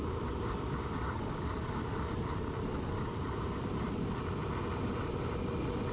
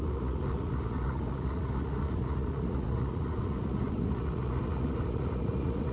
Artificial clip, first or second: second